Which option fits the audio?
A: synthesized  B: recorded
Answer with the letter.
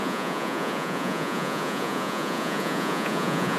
A